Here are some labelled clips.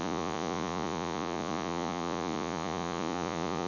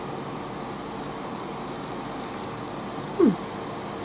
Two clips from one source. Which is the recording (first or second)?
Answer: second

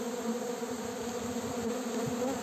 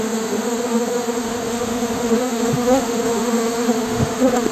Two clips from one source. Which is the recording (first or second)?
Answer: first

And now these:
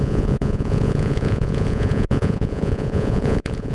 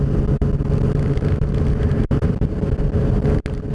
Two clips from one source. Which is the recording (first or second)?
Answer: second